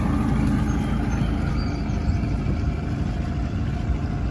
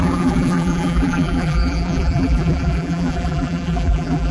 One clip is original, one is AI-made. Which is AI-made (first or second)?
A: second